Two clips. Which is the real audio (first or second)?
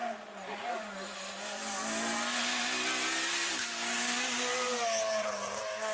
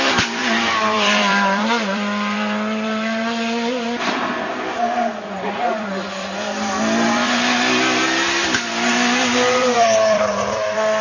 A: first